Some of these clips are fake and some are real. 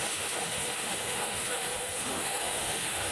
fake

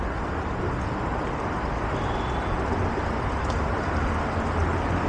real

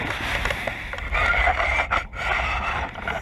real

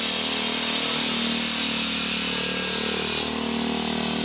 real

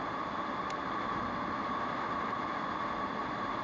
real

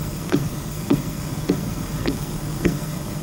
fake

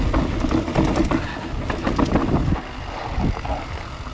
real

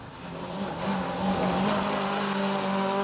real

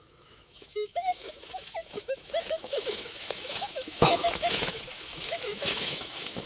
fake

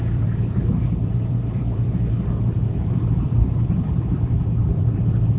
fake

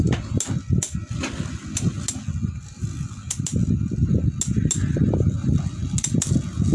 real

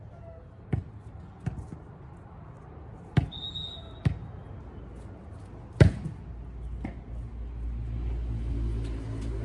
real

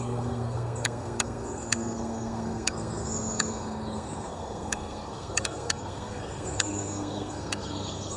fake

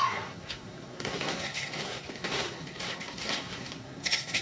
fake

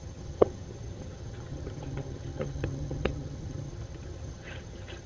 fake